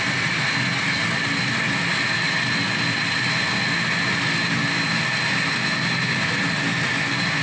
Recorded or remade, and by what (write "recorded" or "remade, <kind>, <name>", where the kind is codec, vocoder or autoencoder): recorded